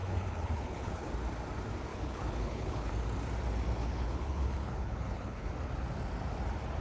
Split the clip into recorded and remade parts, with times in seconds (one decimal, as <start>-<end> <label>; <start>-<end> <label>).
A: 0.0-1.1 remade; 1.1-1.9 recorded; 1.9-2.9 remade; 2.9-3.8 recorded; 3.8-5.5 remade; 5.5-6.8 recorded